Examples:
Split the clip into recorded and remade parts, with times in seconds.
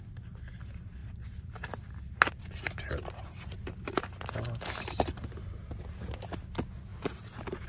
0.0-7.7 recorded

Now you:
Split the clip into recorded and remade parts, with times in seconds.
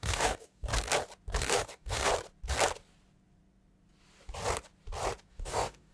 0.0-0.7 remade; 0.7-1.4 recorded; 1.4-2.1 remade; 2.1-5.3 recorded; 5.3-5.9 remade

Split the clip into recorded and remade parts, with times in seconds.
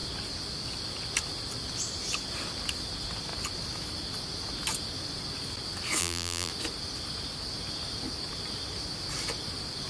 0.0-6.0 recorded; 6.0-6.5 remade; 6.5-9.9 recorded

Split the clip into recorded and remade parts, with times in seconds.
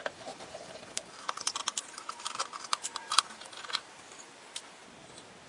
0.0-1.6 remade; 1.6-2.7 recorded; 2.7-5.5 remade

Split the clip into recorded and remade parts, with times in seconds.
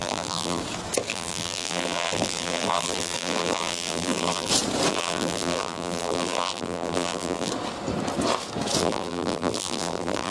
0.0-0.6 remade; 0.6-1.1 recorded; 1.1-4.5 remade; 4.5-4.9 recorded; 4.9-7.5 remade; 7.5-8.8 recorded; 8.8-10.3 remade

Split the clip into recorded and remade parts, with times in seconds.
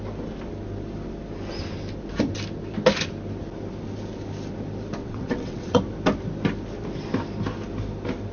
0.0-5.0 recorded; 5.0-5.8 remade; 5.8-8.3 recorded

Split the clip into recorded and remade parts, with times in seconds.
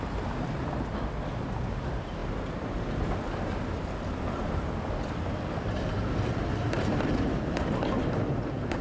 0.0-8.8 recorded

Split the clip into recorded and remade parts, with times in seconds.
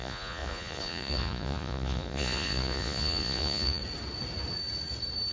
0.0-3.8 remade; 3.8-5.3 recorded